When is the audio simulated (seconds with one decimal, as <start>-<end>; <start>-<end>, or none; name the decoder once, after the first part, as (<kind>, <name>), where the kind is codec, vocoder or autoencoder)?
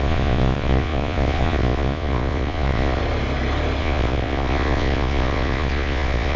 0.0-3.0 (vocoder, Vocos); 3.8-6.4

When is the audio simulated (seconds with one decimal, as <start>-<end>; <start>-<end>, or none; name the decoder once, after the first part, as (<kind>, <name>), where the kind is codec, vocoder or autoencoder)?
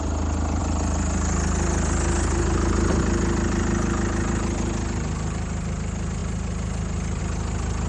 none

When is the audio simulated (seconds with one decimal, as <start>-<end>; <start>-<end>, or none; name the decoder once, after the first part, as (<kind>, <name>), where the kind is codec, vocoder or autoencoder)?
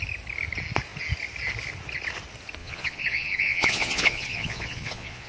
2.6-5.3 (vocoder, Vocos)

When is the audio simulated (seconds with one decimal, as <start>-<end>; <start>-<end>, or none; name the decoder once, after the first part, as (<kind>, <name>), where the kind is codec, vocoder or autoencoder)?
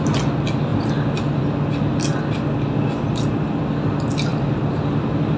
none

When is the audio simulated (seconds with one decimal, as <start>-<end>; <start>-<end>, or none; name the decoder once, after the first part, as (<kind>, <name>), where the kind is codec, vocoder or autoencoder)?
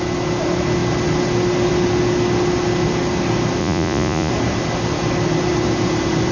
3.6-4.3 (vocoder, Vocos)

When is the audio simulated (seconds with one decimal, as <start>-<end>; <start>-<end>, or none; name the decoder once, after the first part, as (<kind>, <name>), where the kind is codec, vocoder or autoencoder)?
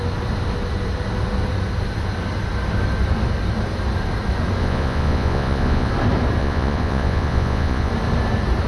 4.6-5.9 (vocoder, Vocos); 6.4-7.9